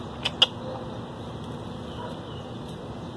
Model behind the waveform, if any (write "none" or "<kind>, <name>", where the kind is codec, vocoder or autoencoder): none